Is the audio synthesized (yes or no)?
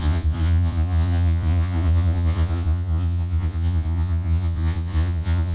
yes